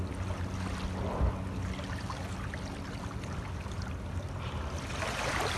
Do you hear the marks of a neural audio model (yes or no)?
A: no